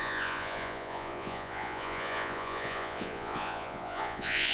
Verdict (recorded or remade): remade